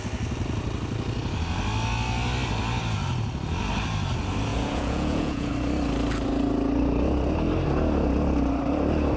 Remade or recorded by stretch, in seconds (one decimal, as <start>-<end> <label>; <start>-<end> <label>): 0.0-4.5 recorded; 4.5-5.5 remade; 5.5-9.2 recorded